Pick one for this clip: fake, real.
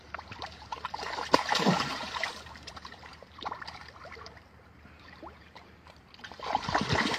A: fake